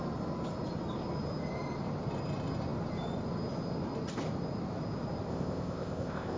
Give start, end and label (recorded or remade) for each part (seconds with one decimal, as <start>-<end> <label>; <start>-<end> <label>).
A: 0.0-5.3 recorded; 5.3-6.4 remade